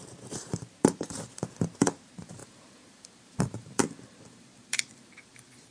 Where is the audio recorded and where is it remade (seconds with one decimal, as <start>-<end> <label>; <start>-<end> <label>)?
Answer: 0.0-5.7 remade